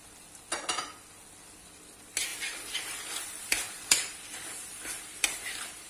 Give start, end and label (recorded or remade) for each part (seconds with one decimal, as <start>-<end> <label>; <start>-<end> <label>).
0.0-2.3 recorded; 2.3-5.9 remade